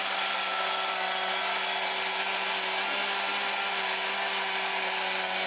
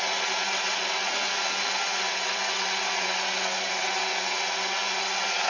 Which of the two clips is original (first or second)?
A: first